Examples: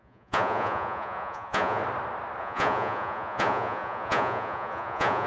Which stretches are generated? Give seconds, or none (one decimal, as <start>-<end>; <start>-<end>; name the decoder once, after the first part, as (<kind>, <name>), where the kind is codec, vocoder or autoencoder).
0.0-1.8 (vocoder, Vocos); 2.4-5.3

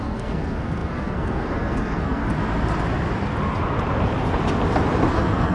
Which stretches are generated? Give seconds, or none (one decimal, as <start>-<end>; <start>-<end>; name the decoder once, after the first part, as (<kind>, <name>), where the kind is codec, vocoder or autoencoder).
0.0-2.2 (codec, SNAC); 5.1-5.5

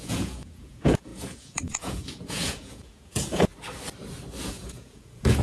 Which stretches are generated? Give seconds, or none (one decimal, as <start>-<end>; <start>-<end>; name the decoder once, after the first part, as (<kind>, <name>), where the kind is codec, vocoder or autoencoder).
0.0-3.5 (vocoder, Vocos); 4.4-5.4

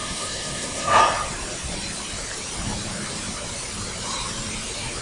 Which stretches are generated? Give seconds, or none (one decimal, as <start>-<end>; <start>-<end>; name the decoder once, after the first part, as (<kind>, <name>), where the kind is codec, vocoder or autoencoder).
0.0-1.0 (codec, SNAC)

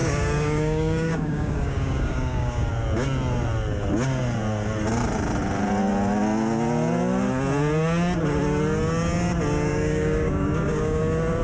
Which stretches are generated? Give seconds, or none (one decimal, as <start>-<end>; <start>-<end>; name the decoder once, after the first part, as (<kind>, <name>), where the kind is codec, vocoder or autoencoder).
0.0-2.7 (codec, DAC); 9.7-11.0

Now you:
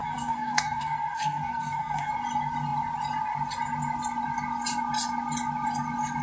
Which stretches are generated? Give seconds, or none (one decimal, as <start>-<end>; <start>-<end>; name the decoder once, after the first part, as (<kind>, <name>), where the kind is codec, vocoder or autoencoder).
0.0-2.1 (codec, SNAC)